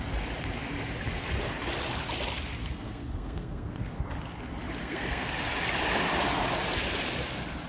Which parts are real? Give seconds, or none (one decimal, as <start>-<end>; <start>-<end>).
0.0-2.6; 4.0-4.8; 5.3-7.7